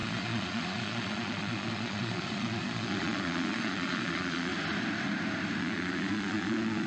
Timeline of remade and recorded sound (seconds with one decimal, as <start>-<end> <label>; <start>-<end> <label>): 0.0-4.5 remade; 4.5-5.6 recorded; 5.6-6.9 remade